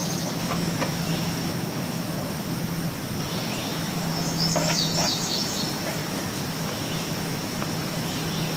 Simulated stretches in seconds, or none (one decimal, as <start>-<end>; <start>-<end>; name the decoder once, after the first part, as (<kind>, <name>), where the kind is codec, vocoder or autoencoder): 0.0-2.6 (autoencoder, DAC-VAE); 3.6-5.6; 6.0-8.2